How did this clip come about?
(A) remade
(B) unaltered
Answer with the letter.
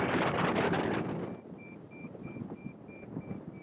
B